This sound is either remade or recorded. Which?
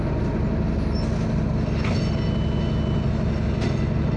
recorded